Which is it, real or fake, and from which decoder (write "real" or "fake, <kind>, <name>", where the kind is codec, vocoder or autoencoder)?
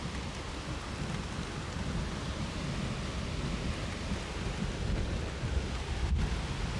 real